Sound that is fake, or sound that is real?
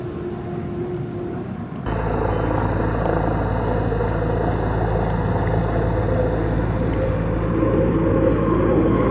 real